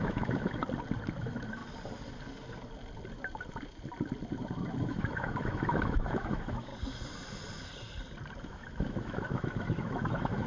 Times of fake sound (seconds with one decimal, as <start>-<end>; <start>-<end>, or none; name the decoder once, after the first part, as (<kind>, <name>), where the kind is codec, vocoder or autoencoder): 0.0-0.6 (autoencoder, DAC-VAE); 1.2-1.6; 4.8-6.7; 8.4-10.5